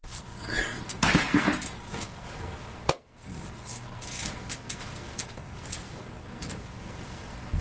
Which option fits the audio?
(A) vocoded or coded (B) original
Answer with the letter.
A